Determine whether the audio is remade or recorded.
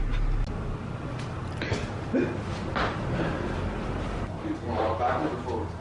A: recorded